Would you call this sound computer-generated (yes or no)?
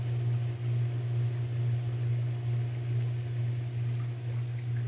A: no